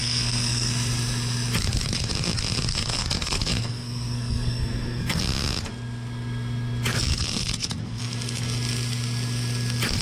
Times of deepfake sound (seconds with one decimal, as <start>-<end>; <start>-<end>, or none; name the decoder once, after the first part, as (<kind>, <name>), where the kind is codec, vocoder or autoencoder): 0.0-0.7 (codec, SNAC); 2.7-5.2; 7.1-8.0

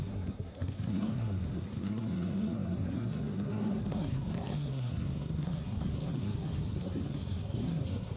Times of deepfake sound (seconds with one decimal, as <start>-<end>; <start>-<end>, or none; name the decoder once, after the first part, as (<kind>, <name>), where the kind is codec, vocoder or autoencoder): 0.0-8.2 (codec, SNAC)

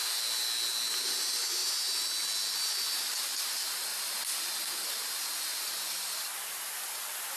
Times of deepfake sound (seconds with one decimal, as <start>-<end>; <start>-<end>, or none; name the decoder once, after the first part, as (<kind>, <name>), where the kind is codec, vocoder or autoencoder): none

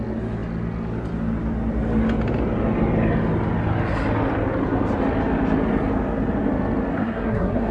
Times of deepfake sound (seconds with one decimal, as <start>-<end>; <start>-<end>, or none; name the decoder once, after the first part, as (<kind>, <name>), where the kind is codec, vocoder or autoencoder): 6.9-7.7 (codec, SNAC)

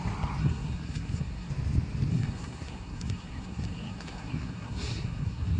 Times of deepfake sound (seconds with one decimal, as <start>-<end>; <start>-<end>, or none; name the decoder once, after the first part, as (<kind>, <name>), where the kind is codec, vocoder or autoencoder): 0.4-1.5 (codec, SNAC); 2.1-5.6

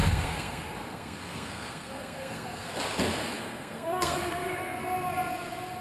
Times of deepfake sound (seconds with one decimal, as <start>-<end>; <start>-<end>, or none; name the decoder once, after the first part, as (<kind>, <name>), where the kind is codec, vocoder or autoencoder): 0.0-2.8 (codec, SNAC); 3.2-4.8

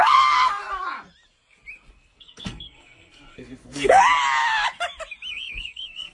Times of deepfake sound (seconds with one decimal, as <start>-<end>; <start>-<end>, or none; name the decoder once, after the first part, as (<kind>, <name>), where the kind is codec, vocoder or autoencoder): 0.0-0.6 (codec, SNAC); 1.9-4.0; 5.3-6.1

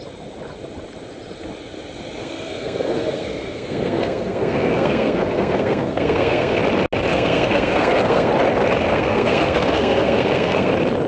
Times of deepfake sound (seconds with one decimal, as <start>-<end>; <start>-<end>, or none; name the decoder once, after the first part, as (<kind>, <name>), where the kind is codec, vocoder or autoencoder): 2.2-6.6 (codec, SNAC); 7.1-8.3; 8.9-10.7